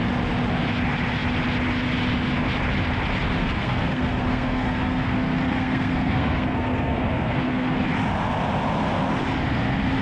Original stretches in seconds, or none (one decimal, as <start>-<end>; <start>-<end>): 0.0-3.4; 7.8-10.0